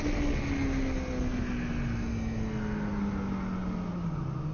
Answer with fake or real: real